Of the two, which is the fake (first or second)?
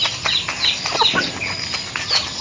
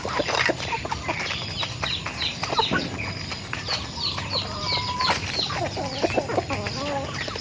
second